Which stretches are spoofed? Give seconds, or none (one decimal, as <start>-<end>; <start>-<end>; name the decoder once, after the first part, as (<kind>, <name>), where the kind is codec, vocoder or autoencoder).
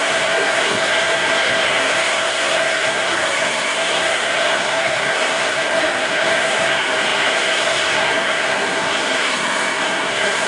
0.0-10.5 (codec, SNAC)